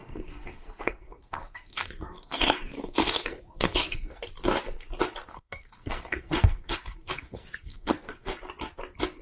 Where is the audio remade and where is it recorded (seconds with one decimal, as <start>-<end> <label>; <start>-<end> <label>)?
0.0-4.2 remade; 4.2-5.3 recorded; 5.3-8.3 remade; 8.3-9.2 recorded